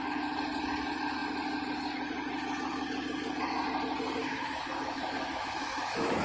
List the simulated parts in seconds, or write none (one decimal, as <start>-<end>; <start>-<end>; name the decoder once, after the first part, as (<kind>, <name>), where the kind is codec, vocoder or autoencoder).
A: 4.2-6.2 (autoencoder, DAC-VAE)